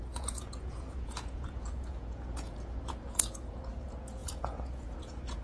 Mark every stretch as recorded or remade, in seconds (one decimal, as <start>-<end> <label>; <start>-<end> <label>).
0.0-5.4 remade